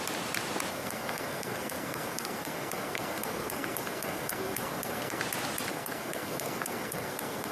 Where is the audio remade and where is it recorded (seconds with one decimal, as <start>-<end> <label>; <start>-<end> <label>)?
0.0-0.7 recorded; 0.7-5.2 remade; 5.2-5.7 recorded; 5.7-7.5 remade